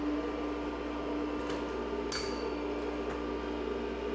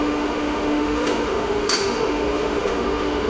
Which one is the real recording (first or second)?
first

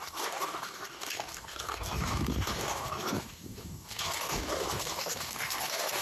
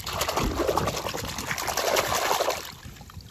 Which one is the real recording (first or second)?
second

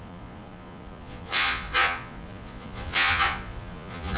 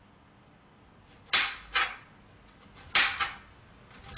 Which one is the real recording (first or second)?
second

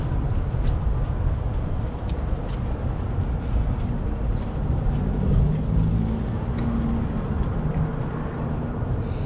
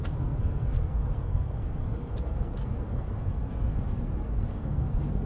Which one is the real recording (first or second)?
first